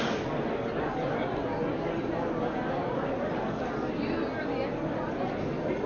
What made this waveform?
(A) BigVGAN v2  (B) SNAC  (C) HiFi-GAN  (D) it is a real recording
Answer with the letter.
D